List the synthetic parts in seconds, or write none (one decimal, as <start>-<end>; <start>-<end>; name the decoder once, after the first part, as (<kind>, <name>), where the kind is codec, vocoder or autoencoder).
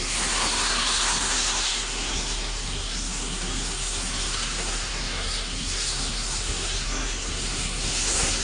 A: 0.0-8.4 (codec, SNAC)